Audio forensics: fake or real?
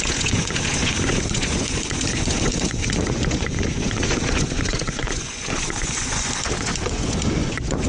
fake